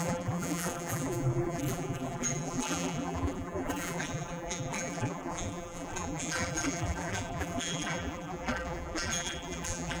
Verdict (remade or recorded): remade